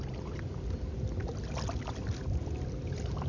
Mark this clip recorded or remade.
recorded